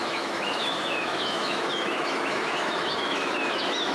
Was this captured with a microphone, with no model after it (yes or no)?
no